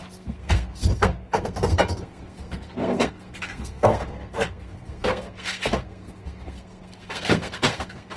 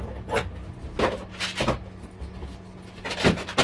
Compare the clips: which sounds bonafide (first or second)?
second